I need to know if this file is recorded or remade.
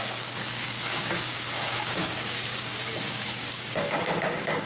remade